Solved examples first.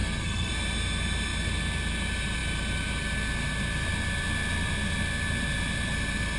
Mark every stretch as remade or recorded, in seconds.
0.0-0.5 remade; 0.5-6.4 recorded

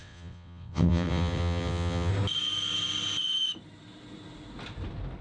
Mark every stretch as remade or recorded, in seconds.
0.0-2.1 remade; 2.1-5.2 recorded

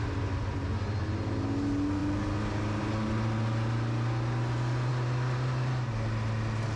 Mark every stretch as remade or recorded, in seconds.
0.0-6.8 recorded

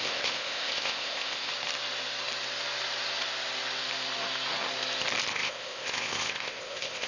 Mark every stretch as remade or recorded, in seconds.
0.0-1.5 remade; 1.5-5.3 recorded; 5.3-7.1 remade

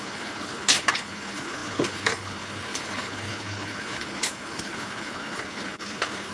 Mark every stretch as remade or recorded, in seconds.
0.0-6.3 remade

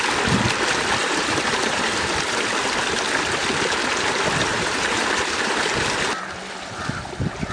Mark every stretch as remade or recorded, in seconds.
0.0-1.0 recorded; 1.0-2.1 remade; 2.1-4.5 recorded; 4.5-6.5 remade; 6.5-7.5 recorded

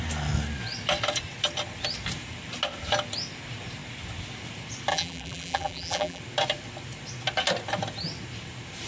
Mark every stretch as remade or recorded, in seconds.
0.0-4.9 recorded; 4.9-6.2 remade; 6.2-8.9 recorded